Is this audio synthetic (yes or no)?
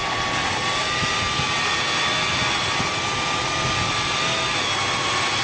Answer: no